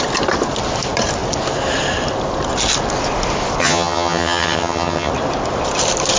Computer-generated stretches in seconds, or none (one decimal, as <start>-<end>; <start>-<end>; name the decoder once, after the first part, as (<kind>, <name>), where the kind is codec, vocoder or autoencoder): 3.6-5.1 (vocoder, HiFi-GAN)